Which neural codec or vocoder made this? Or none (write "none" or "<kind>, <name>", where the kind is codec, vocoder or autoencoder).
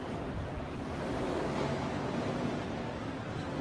none